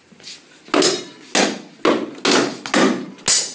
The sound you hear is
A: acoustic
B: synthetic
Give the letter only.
A